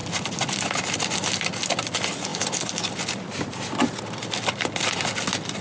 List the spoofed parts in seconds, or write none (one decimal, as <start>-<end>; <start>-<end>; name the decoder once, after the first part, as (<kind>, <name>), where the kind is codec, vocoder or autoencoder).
none